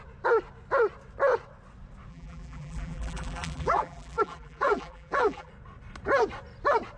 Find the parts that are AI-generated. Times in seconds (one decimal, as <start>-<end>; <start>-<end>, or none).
2.1-5.5